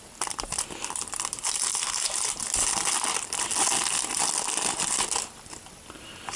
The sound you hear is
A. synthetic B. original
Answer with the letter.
B